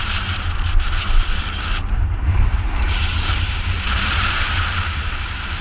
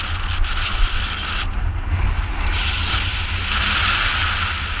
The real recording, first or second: second